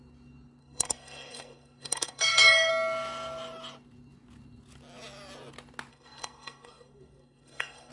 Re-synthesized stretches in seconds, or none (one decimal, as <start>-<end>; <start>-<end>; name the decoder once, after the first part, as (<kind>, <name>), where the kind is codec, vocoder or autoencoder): 0.6-2.7 (codec, SNAC); 5.9-7.9